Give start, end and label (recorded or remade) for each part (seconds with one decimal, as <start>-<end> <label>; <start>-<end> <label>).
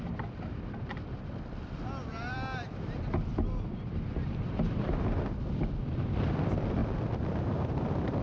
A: 0.0-6.8 remade; 6.8-7.7 recorded; 7.7-8.2 remade